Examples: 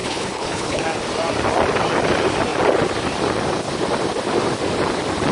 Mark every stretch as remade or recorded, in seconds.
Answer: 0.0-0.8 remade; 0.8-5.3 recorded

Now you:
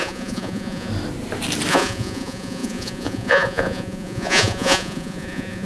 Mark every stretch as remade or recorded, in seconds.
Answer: 0.0-0.9 remade; 0.9-1.7 recorded; 1.7-5.6 remade